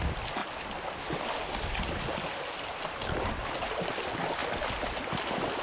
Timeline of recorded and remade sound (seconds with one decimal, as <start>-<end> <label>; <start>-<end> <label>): 0.0-5.6 recorded